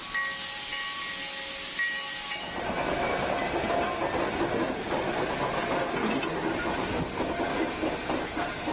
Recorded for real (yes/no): yes